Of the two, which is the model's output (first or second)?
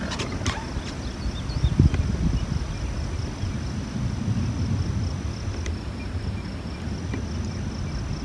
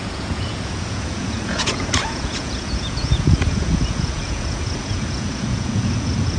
second